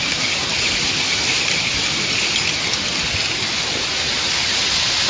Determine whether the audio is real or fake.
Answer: real